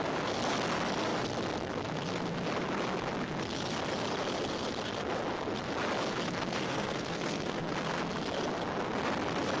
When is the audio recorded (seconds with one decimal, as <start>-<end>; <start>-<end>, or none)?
0.0-6.4; 7.7-9.6